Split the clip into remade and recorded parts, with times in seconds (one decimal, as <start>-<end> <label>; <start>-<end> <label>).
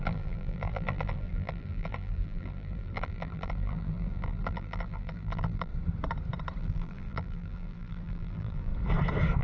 0.0-5.7 remade; 5.7-6.6 recorded; 6.6-8.7 remade; 8.7-9.4 recorded